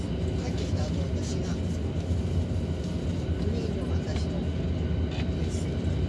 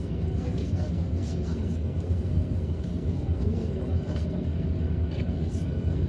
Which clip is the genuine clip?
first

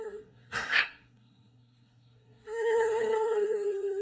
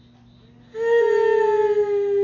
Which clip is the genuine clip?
second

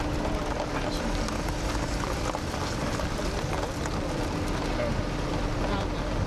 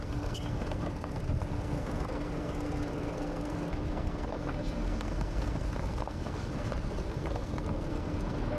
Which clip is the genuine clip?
first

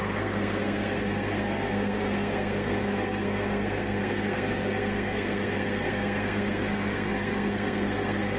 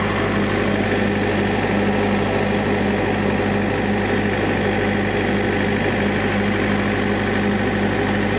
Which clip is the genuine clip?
second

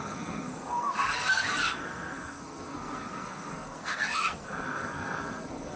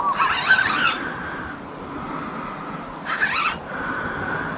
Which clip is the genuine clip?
second